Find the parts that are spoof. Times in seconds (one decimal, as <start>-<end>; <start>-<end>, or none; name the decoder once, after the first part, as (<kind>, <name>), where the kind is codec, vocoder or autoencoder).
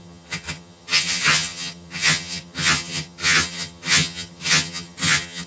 0.0-5.5 (vocoder, HiFi-GAN)